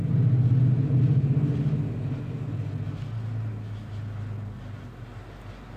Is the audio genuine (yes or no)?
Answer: yes